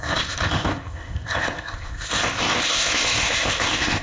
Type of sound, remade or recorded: remade